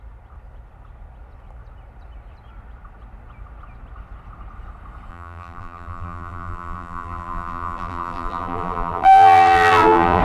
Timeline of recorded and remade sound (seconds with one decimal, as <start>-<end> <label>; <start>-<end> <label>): 0.0-5.1 recorded; 5.1-10.2 remade